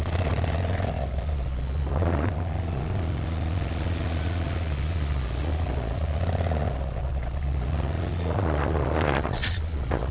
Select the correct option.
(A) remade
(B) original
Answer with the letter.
A